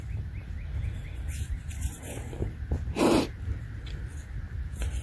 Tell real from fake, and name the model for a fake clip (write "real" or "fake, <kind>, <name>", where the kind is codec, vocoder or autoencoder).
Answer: real